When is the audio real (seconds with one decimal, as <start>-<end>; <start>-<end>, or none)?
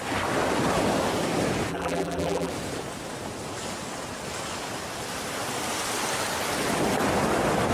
0.0-1.7; 2.5-7.7